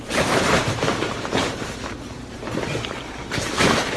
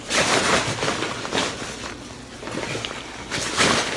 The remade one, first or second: first